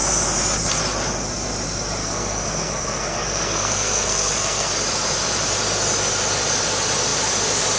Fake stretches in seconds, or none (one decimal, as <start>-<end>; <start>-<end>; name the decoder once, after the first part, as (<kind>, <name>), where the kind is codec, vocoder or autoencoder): 2.0-4.7 (codec, SNAC)